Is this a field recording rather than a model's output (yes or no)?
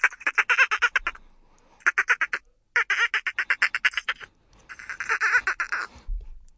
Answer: yes